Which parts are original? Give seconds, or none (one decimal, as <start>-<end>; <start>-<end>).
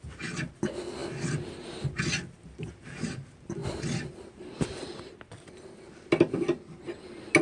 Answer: 0.0-7.4